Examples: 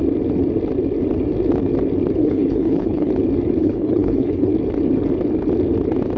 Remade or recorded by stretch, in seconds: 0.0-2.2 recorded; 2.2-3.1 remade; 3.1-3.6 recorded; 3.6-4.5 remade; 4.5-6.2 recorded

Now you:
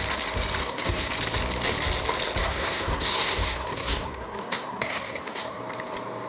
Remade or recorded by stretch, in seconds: 0.0-0.6 recorded; 0.6-1.1 remade; 1.1-2.4 recorded; 2.4-5.6 remade; 5.6-6.3 recorded